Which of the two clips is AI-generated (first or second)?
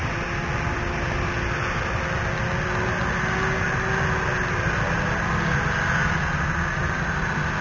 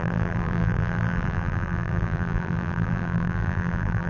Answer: second